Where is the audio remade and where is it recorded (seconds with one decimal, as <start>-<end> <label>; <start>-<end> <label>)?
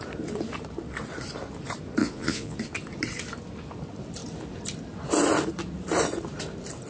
0.0-2.0 recorded; 2.0-2.6 remade; 2.6-6.9 recorded